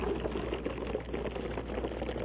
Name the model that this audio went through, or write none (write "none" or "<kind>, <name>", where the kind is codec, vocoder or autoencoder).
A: none